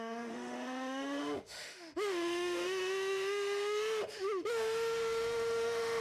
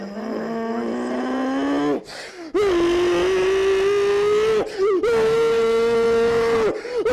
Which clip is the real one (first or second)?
second